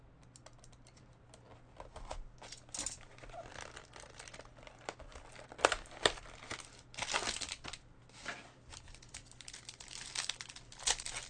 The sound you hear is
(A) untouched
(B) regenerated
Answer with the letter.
A